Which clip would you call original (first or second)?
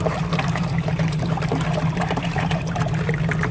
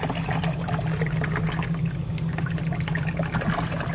second